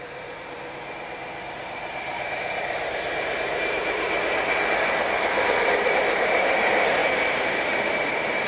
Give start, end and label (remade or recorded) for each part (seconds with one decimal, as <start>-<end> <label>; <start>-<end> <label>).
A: 0.0-8.5 remade